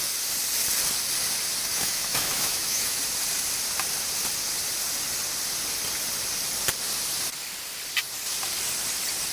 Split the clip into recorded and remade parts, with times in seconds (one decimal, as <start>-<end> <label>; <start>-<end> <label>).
0.0-1.7 recorded; 1.7-3.0 remade; 3.0-9.3 recorded